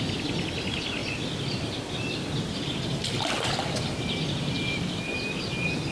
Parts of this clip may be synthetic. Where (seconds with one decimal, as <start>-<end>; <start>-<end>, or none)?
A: none